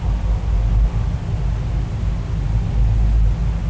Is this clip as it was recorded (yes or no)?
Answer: yes